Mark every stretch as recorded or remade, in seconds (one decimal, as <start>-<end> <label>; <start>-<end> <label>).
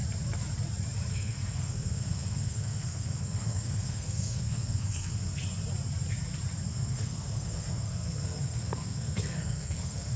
0.0-1.1 recorded; 1.1-5.4 remade; 5.4-6.7 recorded; 6.7-10.2 remade